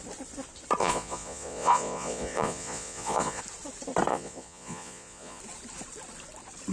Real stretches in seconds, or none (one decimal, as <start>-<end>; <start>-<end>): 0.0-0.8; 3.4-4.1; 5.4-6.7